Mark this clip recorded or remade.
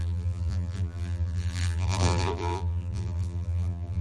remade